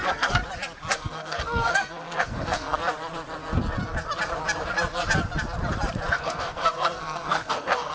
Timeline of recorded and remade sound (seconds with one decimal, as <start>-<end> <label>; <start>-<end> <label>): 0.0-0.4 remade; 0.4-0.9 recorded; 0.9-2.8 remade; 2.8-6.1 recorded; 6.1-7.9 remade